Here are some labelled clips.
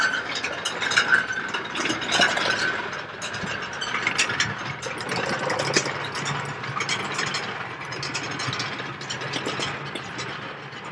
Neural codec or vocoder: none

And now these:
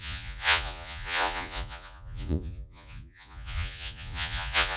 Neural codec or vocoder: vocoder, Vocos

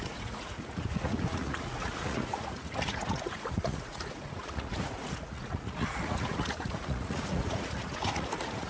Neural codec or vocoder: vocoder, Vocos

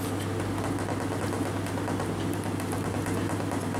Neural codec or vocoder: none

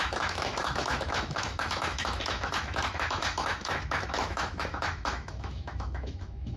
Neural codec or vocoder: autoencoder, DAC-VAE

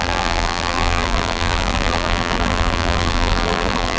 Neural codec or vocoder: vocoder, BigVGAN v2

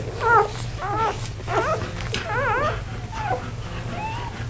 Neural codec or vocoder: none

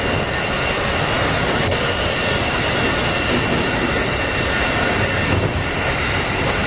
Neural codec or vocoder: none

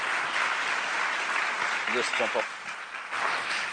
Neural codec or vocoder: none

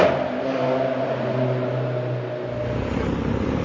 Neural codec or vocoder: none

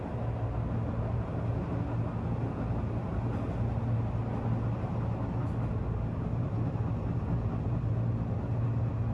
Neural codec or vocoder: none